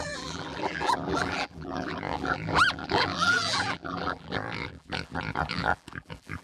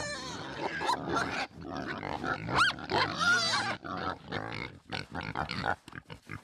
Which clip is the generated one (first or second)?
first